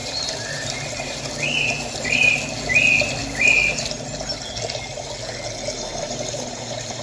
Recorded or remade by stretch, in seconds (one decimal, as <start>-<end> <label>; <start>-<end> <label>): 0.0-1.2 remade; 1.2-5.9 recorded; 5.9-7.0 remade